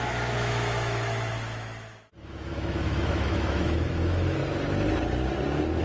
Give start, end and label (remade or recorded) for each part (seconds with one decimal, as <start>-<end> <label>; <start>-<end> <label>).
0.0-4.4 remade; 4.4-5.8 recorded